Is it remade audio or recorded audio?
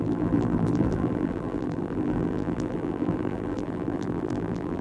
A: remade